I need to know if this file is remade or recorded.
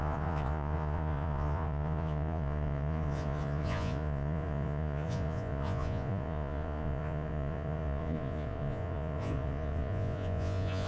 remade